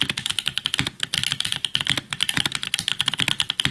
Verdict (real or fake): real